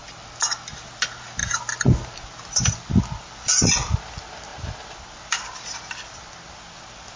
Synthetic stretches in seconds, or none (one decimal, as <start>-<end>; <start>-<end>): none